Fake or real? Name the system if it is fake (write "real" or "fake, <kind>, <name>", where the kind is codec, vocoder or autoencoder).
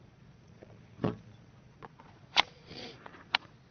fake, vocoder, Vocos